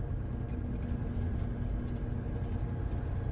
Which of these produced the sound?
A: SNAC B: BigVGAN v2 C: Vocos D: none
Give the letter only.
D